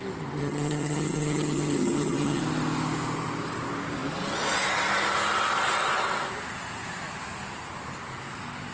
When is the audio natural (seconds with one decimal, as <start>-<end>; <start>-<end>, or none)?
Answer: 0.0-0.4; 2.4-8.7